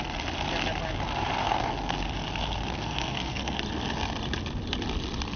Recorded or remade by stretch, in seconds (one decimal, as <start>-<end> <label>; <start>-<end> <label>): 0.0-1.4 recorded; 1.4-2.0 remade; 2.0-2.7 recorded; 2.7-3.6 remade; 3.6-5.4 recorded